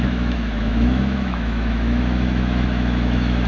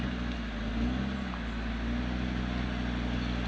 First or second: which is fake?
first